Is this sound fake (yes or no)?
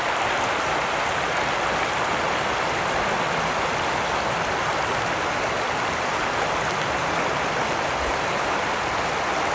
no